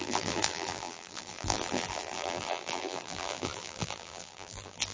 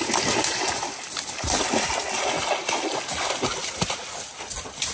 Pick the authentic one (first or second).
second